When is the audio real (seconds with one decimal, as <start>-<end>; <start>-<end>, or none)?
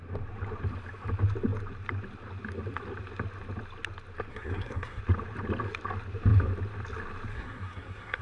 0.0-4.3; 5.0-7.3